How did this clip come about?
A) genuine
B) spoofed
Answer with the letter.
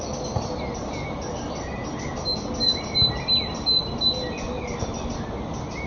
A